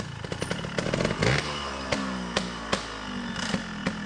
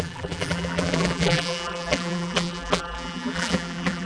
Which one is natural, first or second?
first